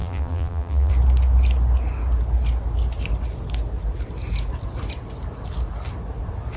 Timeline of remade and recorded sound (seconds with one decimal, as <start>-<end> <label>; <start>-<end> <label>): 0.0-0.9 remade; 0.9-6.6 recorded